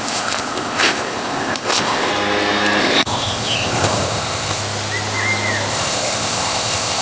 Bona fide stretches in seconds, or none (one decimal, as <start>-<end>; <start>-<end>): 2.1-2.8; 4.6-5.7